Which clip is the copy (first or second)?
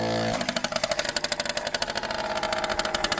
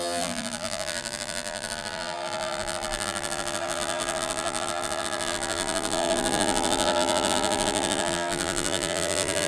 second